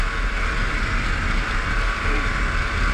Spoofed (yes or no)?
no